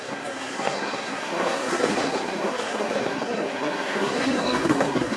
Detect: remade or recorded remade